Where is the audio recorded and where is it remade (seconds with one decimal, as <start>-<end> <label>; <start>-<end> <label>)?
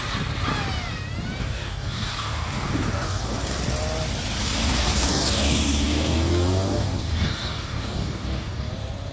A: 0.0-1.4 recorded; 1.4-3.6 remade; 3.6-4.4 recorded; 4.4-8.7 remade; 8.7-9.1 recorded